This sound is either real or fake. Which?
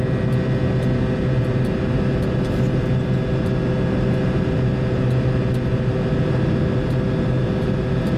real